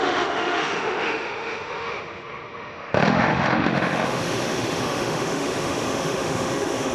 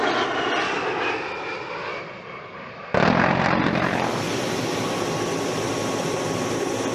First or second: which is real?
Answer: second